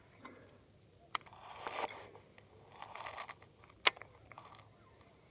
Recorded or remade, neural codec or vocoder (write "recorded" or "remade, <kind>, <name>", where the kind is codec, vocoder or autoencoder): recorded